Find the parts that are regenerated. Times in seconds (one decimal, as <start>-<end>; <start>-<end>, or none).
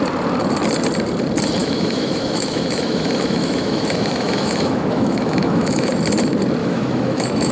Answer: 1.6-5.9; 6.6-7.5